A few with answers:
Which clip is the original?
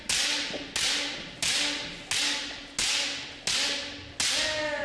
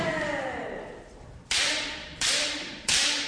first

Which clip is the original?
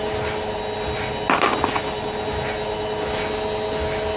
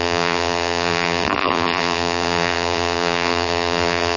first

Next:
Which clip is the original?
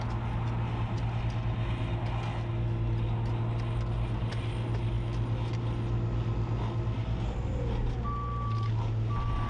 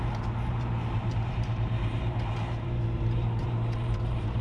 first